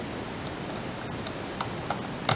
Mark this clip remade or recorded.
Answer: recorded